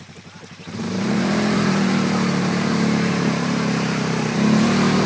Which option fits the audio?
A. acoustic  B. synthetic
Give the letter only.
B